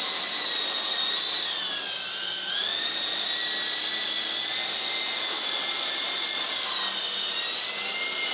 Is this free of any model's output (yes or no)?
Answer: yes